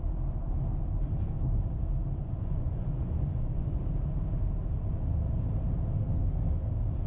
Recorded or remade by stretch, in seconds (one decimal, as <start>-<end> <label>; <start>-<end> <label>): 0.0-2.2 recorded; 2.2-3.8 remade; 3.8-7.1 recorded